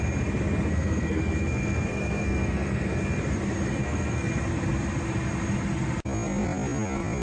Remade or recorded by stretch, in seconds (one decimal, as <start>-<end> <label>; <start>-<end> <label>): 0.0-0.7 recorded; 0.7-2.9 remade; 2.9-3.8 recorded; 3.8-4.3 remade; 4.3-7.2 recorded